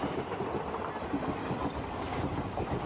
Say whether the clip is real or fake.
real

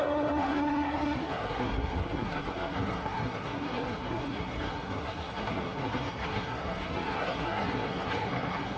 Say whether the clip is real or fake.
fake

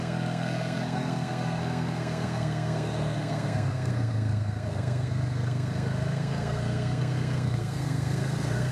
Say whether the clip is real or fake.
fake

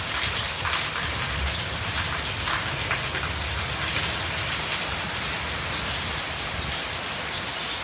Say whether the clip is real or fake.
real